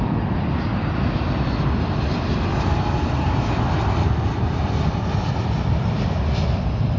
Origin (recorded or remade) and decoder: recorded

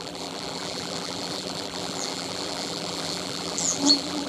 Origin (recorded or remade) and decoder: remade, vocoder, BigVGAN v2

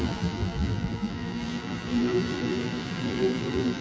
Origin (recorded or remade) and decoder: remade, vocoder, BigVGAN v2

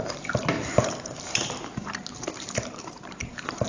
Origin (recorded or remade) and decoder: remade, vocoder, BigVGAN v2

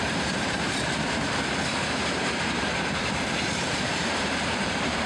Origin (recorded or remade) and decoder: remade, vocoder, BigVGAN v2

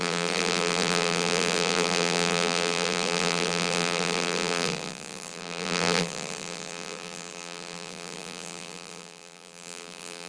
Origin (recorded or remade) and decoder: remade, vocoder, BigVGAN v2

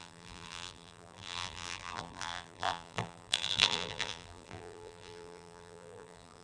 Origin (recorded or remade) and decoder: remade, vocoder, BigVGAN v2